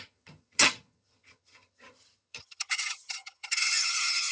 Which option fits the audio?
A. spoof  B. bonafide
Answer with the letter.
A